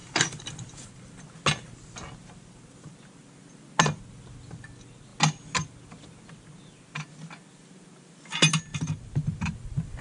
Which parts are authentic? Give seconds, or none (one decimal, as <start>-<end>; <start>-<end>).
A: 1.2-8.7